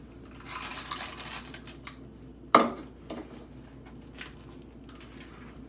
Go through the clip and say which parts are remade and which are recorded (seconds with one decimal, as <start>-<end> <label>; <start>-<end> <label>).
0.0-5.7 recorded